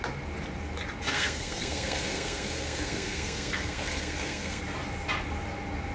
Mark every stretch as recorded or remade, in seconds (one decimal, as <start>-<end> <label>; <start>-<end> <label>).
0.0-1.1 recorded; 1.1-4.6 remade; 4.6-5.9 recorded